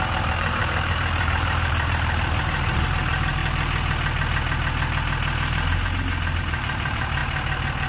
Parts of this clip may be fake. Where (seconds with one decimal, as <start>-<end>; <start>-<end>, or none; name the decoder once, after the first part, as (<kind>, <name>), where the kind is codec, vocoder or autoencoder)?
0.0-3.4 (vocoder, BigVGAN v2); 6.4-7.2